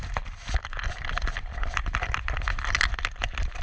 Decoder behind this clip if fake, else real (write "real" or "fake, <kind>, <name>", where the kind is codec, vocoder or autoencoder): real